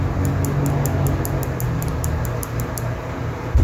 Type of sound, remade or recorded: recorded